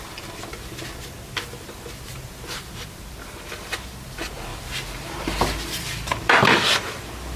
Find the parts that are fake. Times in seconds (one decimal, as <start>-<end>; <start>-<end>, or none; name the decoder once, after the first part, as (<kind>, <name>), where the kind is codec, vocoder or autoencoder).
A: 4.5-7.4 (vocoder, BigVGAN v2)